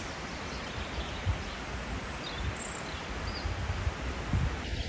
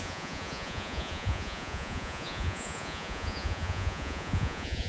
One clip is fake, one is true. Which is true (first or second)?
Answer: first